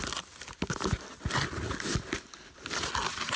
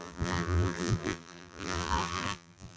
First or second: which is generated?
second